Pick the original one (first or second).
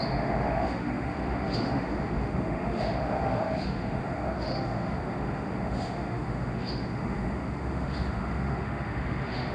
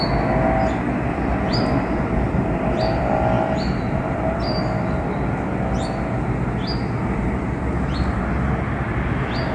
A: second